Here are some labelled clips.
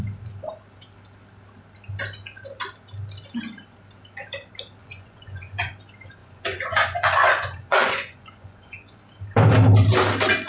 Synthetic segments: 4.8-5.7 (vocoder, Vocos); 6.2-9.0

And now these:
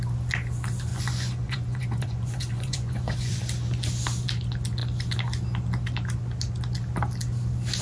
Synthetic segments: 0.9-3.4 (vocoder, Vocos)

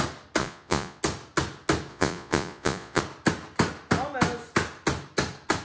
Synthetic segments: 0.4-1.0 (vocoder, Vocos); 1.9-3.0

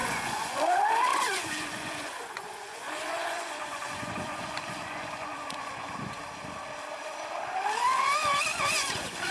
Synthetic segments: 0.0-0.6 (vocoder, Vocos); 1.1-6.2; 8.5-9.3

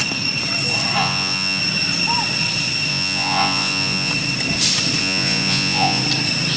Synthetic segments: 1.0-1.6 (vocoder, Vocos); 2.9-4.1; 5.0-6.0